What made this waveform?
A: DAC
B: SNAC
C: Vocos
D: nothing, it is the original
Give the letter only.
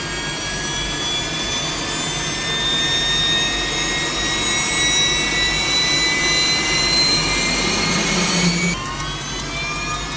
D